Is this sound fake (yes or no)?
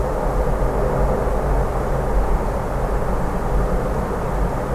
no